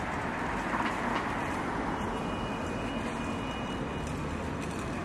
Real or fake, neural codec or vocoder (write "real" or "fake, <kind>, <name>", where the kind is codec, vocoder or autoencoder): real